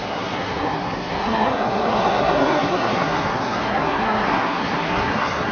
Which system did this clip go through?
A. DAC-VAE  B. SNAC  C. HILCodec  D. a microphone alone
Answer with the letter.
B